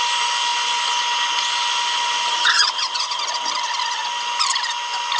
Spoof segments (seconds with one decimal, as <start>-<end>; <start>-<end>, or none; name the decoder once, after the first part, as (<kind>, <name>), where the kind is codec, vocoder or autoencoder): 2.3-3.2 (vocoder, HiFi-GAN)